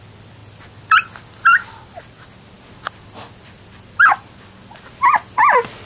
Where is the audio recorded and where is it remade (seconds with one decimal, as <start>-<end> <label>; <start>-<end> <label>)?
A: 0.0-5.9 recorded